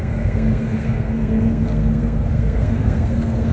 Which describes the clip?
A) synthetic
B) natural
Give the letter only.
A